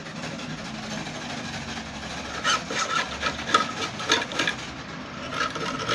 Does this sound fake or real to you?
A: real